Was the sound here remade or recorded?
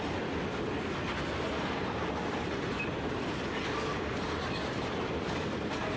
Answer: recorded